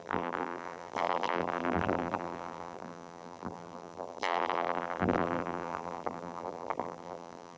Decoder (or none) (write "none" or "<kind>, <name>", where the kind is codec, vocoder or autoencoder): vocoder, BigVGAN v2